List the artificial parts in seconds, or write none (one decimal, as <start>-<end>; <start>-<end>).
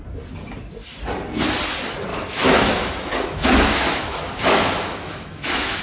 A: 2.1-5.8